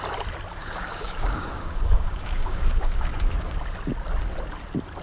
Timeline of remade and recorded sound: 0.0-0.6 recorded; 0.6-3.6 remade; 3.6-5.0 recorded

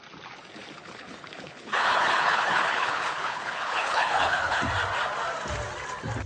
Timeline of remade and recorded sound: 0.0-0.8 recorded; 0.8-4.6 remade; 4.6-6.3 recorded